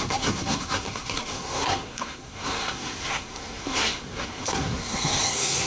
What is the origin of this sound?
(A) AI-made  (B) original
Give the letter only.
A